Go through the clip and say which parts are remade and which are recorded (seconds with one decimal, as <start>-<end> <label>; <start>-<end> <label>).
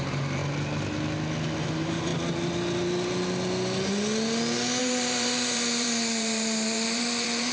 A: 0.0-0.4 remade; 0.4-1.6 recorded; 1.6-2.1 remade; 2.1-4.8 recorded; 4.8-7.5 remade